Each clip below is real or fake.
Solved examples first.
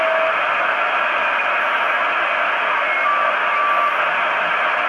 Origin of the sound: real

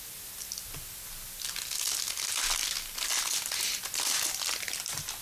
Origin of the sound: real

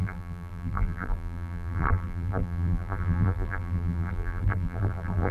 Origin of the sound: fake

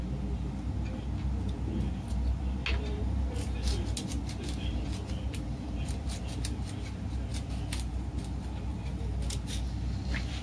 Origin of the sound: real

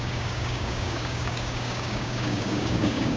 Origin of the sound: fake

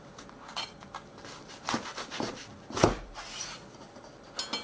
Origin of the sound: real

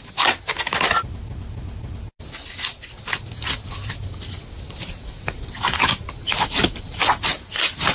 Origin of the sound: real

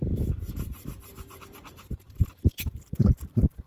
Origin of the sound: fake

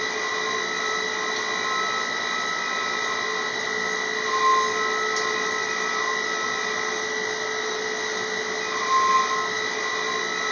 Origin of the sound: real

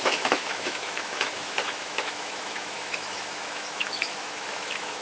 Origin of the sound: fake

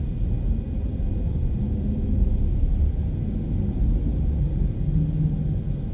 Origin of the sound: real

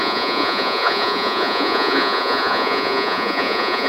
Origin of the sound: fake